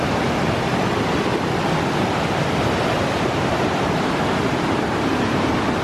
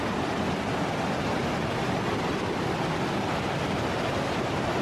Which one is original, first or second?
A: second